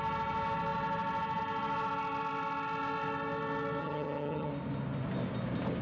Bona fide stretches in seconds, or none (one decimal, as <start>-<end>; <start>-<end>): 0.0-3.8; 4.5-5.8